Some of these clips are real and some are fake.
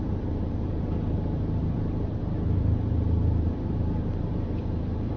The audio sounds fake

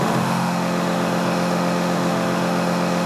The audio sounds fake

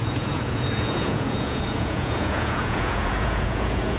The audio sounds fake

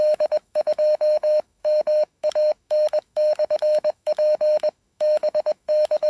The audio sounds fake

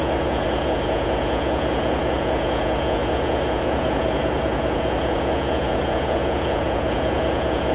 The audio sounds fake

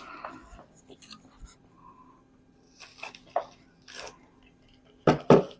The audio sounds real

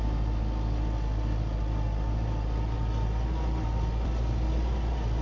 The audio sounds real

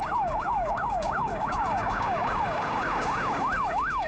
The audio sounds fake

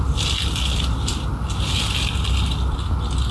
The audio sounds real